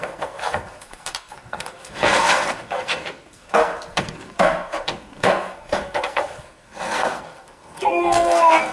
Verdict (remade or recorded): remade